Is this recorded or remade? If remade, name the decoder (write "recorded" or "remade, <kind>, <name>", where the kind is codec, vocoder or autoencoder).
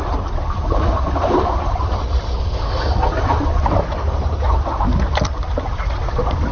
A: recorded